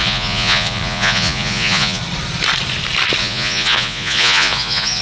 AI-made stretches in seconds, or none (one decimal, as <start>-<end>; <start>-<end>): 0.0-2.0; 3.2-5.0